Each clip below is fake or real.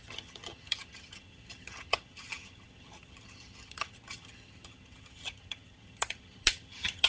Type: fake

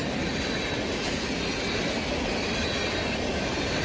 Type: real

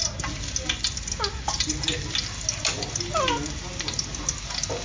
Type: real